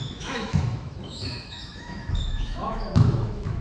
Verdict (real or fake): fake